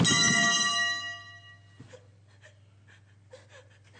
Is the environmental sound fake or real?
real